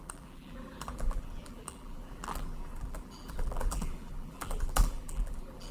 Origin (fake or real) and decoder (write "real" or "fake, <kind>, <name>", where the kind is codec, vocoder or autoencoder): fake, vocoder, BigVGAN v2